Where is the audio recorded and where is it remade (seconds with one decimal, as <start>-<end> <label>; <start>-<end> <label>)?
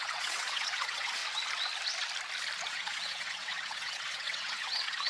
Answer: 0.0-1.2 remade; 1.2-2.6 recorded; 2.6-5.1 remade